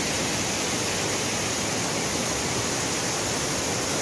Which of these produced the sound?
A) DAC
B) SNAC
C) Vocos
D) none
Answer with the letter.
D